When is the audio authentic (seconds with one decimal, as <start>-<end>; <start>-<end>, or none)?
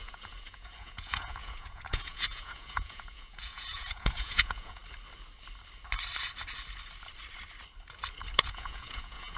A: 4.8-8.4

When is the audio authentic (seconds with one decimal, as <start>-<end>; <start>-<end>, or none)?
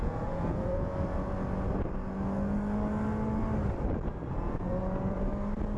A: 0.9-4.3; 5.3-5.8